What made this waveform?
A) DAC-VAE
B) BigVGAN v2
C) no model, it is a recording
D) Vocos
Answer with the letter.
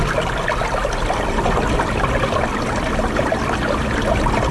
C